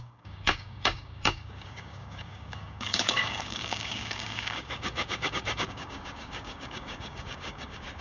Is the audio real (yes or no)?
no